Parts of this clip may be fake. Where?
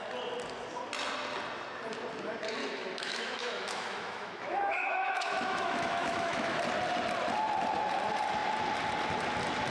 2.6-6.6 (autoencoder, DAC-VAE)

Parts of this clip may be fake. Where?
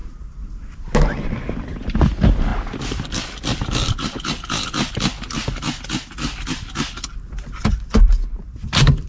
none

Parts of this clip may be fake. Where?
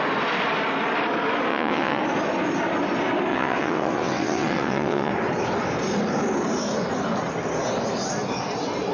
1.5-2.0 (vocoder, WaveNeXt); 3.3-5.1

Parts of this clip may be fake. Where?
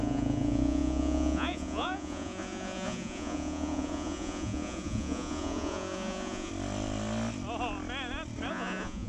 0.0-6.5 (vocoder, Vocos); 8.5-9.1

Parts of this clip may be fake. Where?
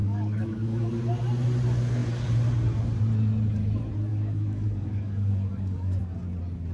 0.0-1.0 (codec, DAC); 4.1-6.0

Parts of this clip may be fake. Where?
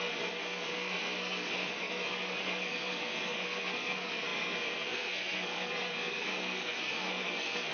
0.0-7.7 (codec, SNAC)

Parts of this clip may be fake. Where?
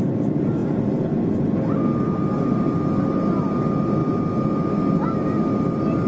none